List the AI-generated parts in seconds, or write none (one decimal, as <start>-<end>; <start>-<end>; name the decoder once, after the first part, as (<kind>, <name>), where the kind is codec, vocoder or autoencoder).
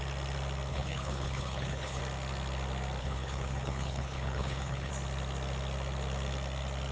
0.7-2.0 (codec, HILCodec); 3.0-4.9